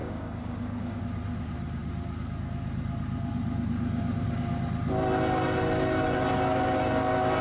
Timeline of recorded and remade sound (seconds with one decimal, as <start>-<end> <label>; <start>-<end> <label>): 0.0-1.0 remade; 1.0-7.4 recorded